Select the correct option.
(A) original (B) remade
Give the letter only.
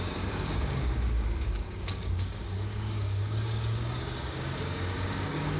B